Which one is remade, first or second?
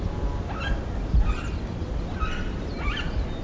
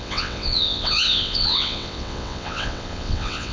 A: second